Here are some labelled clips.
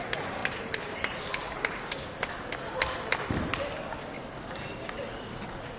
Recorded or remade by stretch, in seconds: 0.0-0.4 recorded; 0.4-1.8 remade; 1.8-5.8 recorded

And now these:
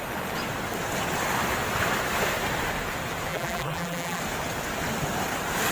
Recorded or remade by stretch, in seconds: 0.0-3.3 recorded; 3.3-4.2 remade; 4.2-5.7 recorded

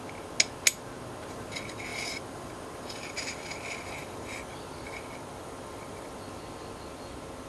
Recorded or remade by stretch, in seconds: 0.0-1.9 recorded; 1.9-6.4 remade; 6.4-7.5 recorded